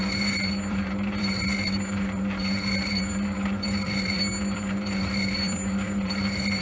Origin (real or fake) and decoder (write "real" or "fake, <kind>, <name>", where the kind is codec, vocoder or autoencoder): fake, vocoder, BigVGAN v2